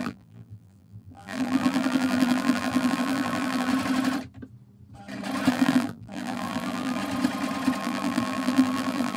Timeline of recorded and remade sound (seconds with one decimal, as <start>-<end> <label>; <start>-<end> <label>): 0.0-3.7 remade; 3.7-5.5 recorded; 5.5-7.0 remade; 7.0-7.8 recorded; 7.8-9.2 remade